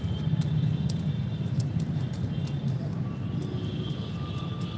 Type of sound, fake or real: real